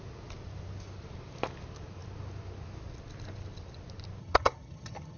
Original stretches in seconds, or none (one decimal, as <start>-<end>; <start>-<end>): 0.0-4.2